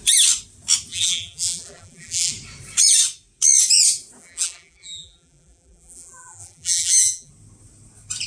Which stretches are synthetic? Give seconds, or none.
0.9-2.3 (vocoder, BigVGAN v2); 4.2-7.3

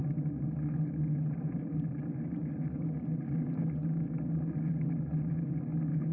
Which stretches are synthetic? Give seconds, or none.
none

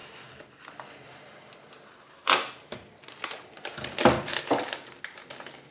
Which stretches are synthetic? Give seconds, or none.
0.0-1.9 (vocoder, BigVGAN v2); 3.7-4.3

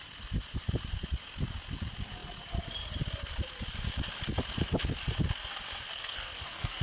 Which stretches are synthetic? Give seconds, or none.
5.9-6.8 (codec, SNAC)